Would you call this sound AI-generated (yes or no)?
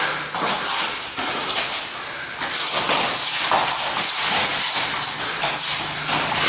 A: no